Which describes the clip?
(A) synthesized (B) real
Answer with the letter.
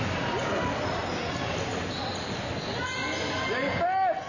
B